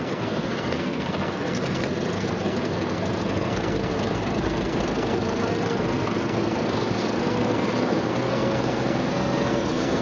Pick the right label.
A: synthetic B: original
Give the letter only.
A